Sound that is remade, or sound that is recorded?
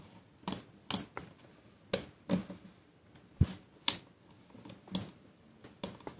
recorded